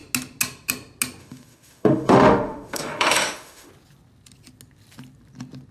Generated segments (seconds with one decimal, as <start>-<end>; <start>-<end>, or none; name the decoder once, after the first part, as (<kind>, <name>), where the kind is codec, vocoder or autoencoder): 1.2-3.7 (autoencoder, DAC-VAE)